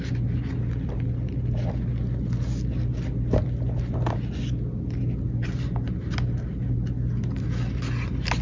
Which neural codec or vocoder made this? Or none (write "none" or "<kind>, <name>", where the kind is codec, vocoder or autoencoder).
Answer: none